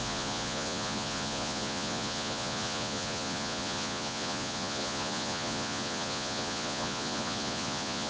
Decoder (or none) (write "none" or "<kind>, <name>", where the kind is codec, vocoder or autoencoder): vocoder, Vocos